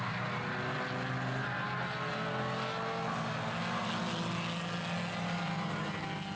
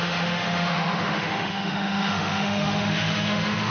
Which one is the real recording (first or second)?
first